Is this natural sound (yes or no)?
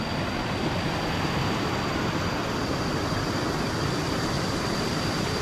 yes